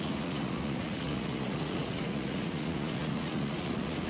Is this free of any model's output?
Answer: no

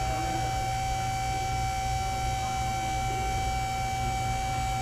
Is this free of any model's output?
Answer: yes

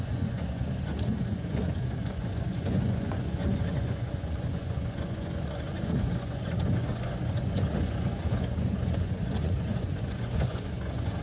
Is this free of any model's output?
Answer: no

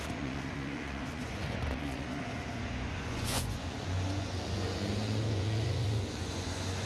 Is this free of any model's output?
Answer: no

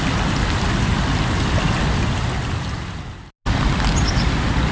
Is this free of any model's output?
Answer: yes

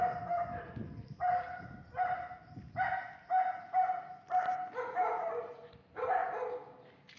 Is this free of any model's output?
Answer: yes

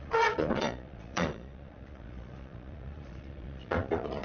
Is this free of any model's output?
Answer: no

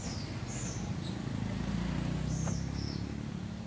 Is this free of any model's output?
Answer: yes